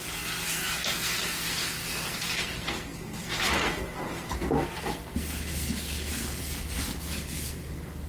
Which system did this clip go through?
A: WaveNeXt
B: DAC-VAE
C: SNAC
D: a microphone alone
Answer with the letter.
C